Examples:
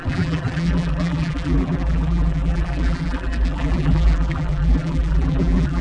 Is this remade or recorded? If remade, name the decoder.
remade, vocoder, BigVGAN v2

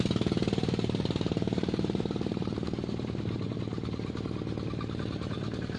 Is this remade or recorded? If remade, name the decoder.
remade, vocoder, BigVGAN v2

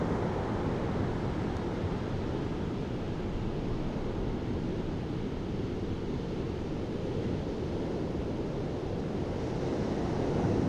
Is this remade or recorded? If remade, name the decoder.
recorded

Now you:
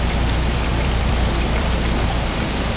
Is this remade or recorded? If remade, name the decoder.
remade, vocoder, BigVGAN v2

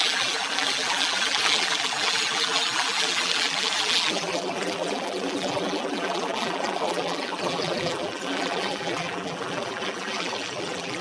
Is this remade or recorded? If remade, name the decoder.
remade, vocoder, BigVGAN v2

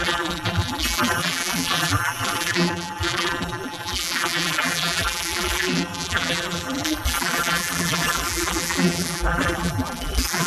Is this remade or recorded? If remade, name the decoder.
remade, vocoder, BigVGAN v2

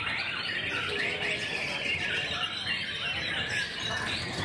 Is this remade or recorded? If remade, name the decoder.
remade, vocoder, BigVGAN v2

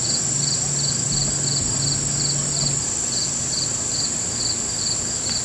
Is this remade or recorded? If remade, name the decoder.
recorded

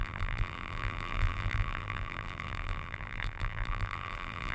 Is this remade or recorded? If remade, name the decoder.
remade, vocoder, BigVGAN v2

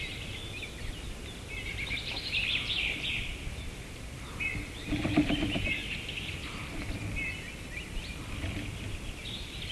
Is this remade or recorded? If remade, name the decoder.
remade, vocoder, BigVGAN v2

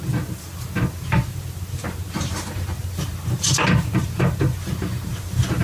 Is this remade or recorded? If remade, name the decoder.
remade, vocoder, BigVGAN v2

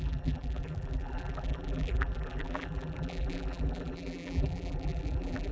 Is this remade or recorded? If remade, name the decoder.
remade, vocoder, BigVGAN v2